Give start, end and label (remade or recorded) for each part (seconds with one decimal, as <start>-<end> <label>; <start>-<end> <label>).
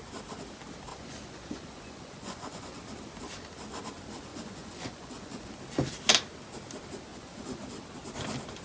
0.0-0.9 recorded; 0.9-2.8 remade; 2.8-4.3 recorded; 4.3-5.5 remade; 5.5-7.1 recorded; 7.1-7.6 remade; 7.6-8.6 recorded